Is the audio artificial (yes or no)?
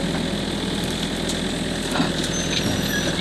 no